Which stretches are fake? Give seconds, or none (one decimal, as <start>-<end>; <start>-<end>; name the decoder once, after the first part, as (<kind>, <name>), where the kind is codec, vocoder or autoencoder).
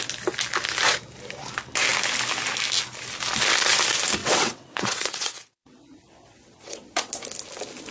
4.2-7.1 (vocoder, WaveNeXt)